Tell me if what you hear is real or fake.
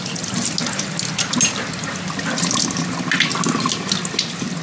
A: real